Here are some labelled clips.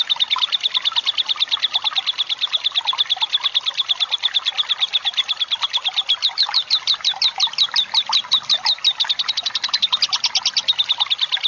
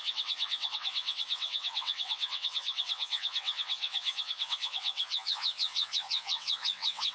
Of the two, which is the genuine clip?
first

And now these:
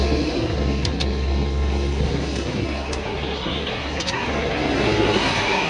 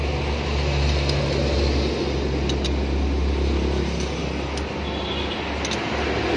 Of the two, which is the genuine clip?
second